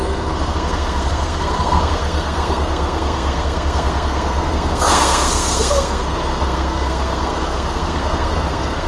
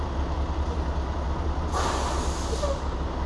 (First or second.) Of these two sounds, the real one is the second